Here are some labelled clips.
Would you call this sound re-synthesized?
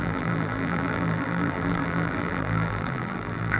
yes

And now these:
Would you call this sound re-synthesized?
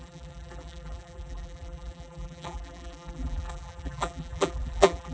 yes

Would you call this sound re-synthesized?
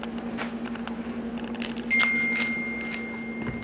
no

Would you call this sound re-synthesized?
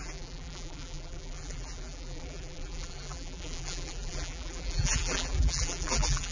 yes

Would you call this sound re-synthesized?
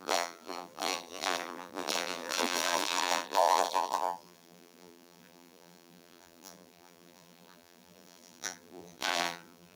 yes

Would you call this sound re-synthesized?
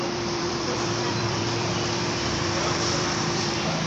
yes